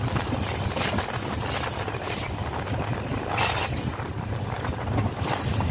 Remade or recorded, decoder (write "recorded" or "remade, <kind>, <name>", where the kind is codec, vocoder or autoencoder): recorded